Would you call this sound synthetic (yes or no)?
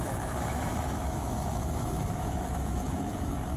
yes